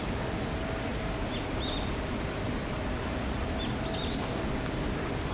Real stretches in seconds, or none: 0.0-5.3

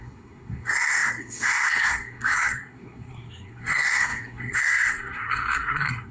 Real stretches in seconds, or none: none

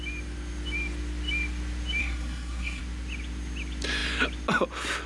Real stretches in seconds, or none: 0.0-2.0; 2.8-5.1

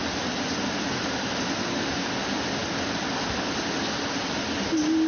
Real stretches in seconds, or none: 0.0-5.1

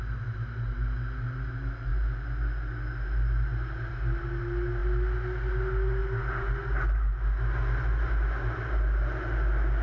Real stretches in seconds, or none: 0.0-9.8

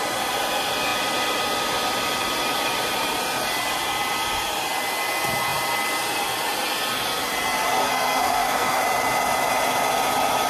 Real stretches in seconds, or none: 0.0-7.8; 8.8-10.5